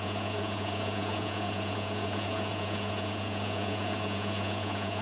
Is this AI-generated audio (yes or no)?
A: yes